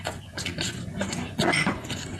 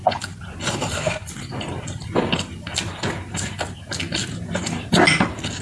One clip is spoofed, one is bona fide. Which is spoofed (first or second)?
first